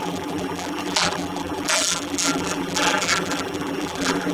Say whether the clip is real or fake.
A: fake